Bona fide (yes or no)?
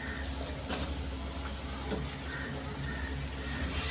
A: yes